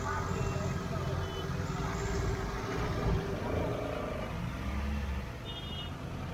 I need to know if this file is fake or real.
real